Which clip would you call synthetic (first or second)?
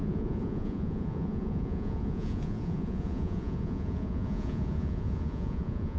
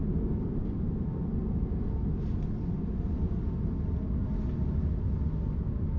first